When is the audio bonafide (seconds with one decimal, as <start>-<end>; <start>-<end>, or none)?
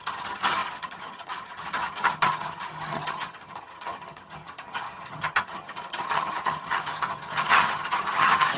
none